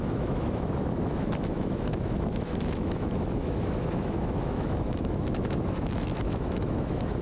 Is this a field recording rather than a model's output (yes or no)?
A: no